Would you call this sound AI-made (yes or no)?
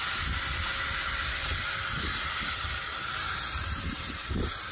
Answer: no